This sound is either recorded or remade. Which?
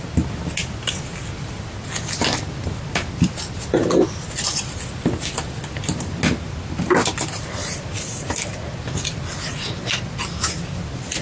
recorded